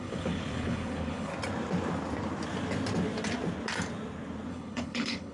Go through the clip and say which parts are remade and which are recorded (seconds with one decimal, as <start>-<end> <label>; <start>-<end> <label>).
0.0-1.3 remade; 1.3-4.5 recorded; 4.5-5.3 remade